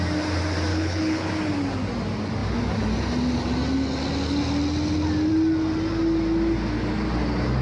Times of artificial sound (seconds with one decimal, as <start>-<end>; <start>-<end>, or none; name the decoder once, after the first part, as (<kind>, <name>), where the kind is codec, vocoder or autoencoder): 0.7-1.3 (codec, HILCodec)